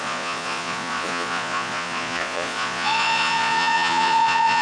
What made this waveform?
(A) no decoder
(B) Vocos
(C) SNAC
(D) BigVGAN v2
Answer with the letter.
B